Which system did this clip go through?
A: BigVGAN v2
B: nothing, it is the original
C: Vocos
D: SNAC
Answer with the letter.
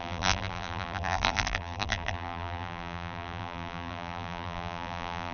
A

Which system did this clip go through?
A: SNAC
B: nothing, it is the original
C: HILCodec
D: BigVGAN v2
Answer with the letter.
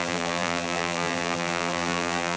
D